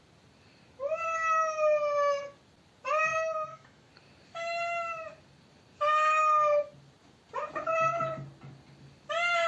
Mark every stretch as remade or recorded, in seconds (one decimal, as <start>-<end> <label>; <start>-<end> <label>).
0.0-3.1 recorded; 3.1-3.9 remade; 3.9-9.5 recorded